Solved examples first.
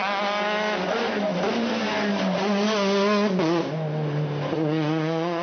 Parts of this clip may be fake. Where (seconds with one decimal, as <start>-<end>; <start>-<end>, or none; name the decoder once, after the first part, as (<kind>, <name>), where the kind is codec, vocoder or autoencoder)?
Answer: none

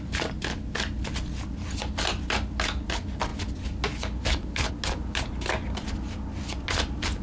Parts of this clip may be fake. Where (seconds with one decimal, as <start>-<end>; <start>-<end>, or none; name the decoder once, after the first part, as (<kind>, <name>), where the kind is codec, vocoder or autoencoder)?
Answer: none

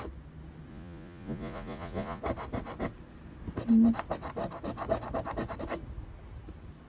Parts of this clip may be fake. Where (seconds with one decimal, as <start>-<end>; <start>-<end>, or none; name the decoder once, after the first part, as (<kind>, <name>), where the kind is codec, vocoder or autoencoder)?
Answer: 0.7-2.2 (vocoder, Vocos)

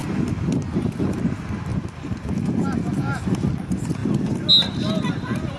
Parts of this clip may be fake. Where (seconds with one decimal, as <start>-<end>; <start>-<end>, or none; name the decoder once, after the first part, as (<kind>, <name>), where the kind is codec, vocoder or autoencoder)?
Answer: none